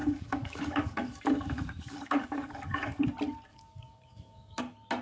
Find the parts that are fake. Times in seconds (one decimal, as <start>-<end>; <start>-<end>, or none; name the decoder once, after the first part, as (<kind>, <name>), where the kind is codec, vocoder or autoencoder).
0.0-3.0 (codec, DAC); 3.5-4.6